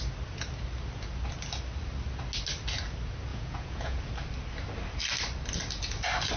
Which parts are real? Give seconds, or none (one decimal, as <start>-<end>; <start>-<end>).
0.0-3.3; 4.0-6.4